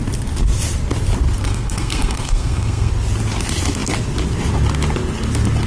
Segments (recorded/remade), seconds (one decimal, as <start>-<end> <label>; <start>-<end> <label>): 0.0-1.4 recorded; 1.4-2.9 remade; 2.9-5.7 recorded